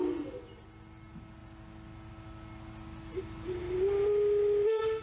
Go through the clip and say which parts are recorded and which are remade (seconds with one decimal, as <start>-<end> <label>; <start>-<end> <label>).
0.0-5.0 recorded